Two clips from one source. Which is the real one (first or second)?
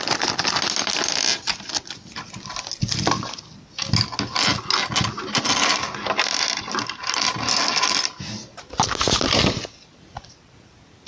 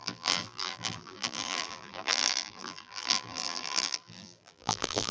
first